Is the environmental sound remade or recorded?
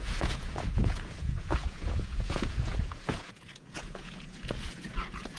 remade